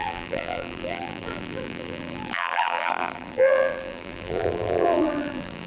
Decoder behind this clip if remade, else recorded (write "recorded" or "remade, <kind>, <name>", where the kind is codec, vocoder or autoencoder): remade, vocoder, BigVGAN v2